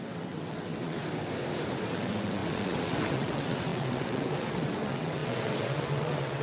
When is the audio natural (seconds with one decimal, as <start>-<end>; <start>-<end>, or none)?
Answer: 1.0-1.9